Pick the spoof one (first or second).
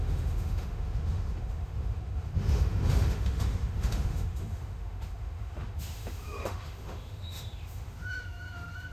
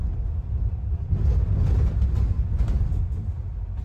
first